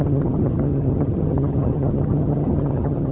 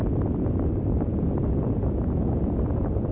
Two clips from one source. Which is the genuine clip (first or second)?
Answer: second